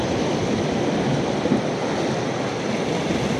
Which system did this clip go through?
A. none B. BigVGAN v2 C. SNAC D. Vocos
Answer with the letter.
A